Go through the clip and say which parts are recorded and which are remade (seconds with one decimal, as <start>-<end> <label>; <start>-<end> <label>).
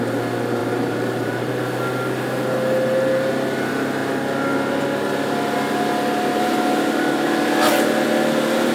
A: 0.0-0.6 recorded; 0.6-1.5 remade; 1.5-8.7 recorded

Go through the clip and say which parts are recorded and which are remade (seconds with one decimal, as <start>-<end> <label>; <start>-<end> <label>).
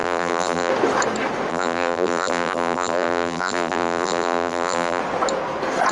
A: 0.0-0.7 remade; 0.7-1.5 recorded; 1.5-5.0 remade; 5.0-5.9 recorded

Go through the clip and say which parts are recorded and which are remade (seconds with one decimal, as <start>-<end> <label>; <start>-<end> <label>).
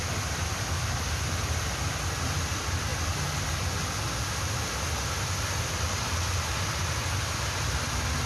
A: 0.0-8.3 recorded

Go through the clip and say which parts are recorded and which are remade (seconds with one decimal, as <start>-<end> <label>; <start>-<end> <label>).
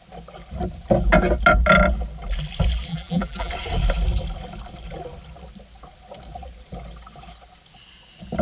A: 0.0-2.9 recorded; 2.9-3.5 remade; 3.5-8.4 recorded